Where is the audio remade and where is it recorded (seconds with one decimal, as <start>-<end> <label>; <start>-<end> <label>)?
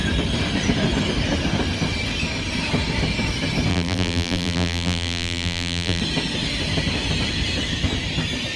0.0-3.7 recorded; 3.7-6.0 remade; 6.0-8.6 recorded